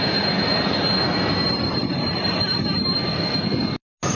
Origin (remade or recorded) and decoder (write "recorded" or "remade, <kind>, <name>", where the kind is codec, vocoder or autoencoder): recorded